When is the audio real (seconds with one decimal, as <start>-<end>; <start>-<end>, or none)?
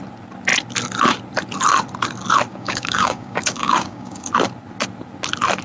0.0-2.5; 4.3-5.6